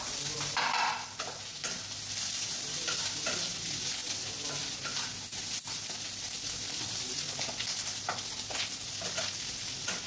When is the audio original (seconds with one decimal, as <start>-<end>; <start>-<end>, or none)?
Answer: 0.0-10.1